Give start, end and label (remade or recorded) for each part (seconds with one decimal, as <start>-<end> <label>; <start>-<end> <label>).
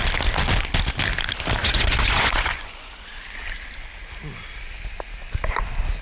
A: 0.0-1.6 recorded; 1.6-2.9 remade; 2.9-6.0 recorded